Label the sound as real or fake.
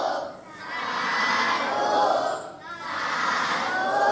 real